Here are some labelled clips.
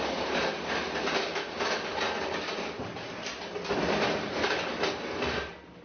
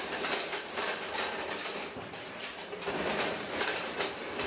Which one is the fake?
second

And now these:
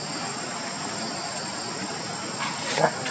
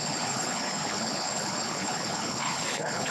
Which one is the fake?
second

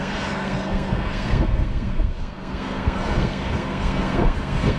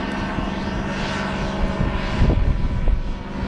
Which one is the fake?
first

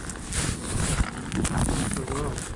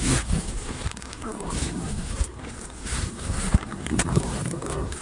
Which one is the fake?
second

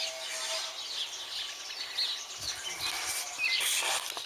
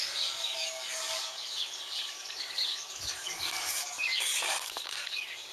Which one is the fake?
second